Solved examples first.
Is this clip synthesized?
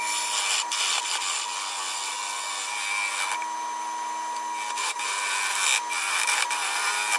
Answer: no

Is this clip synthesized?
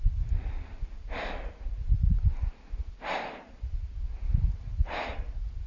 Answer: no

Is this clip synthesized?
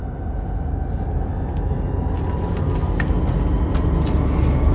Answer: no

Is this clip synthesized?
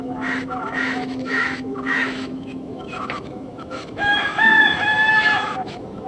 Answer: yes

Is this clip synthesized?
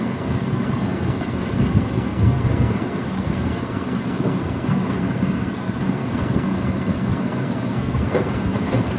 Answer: yes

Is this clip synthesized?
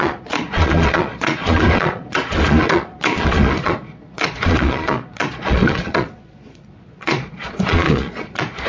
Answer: yes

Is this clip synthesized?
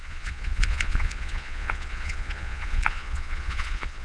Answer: yes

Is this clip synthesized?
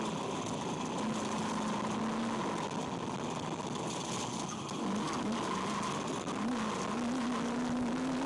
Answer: no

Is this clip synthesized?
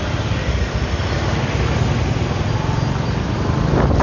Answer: no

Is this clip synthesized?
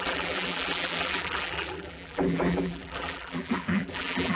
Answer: yes